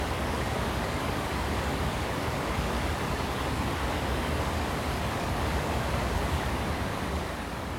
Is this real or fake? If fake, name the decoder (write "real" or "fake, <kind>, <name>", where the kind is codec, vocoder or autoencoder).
fake, codec, DAC